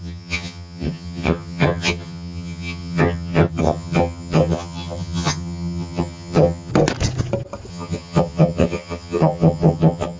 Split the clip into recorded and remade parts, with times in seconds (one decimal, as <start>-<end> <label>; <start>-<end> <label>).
0.0-6.7 remade; 6.7-7.7 recorded; 7.7-10.2 remade